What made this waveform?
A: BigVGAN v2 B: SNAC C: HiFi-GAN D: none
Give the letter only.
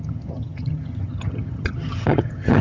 C